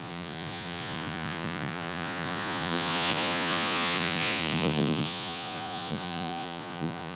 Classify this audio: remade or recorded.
remade